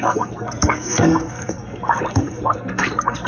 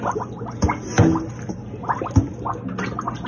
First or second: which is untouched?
second